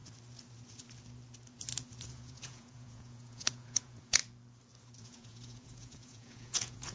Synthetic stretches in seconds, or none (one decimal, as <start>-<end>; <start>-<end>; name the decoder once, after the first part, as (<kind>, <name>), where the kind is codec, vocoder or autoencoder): 2.1-4.2 (vocoder, Vocos); 5.0-6.9